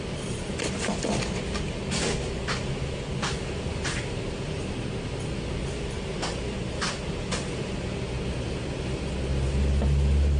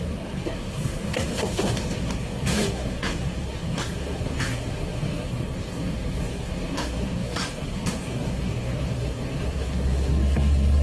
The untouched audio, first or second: first